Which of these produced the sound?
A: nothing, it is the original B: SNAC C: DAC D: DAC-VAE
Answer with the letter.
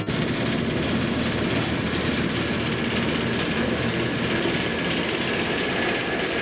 A